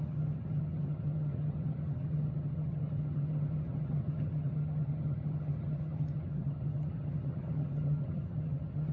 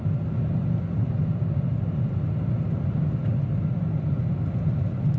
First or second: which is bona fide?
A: second